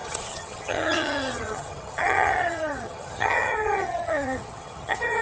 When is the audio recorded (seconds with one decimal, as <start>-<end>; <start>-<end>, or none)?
none